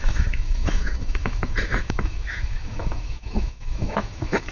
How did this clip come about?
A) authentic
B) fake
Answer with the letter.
B